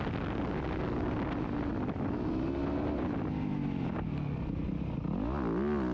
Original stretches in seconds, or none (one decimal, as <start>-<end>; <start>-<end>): 0.0-5.9